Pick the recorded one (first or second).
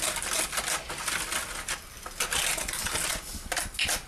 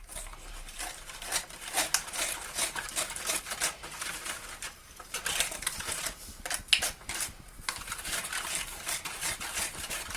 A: first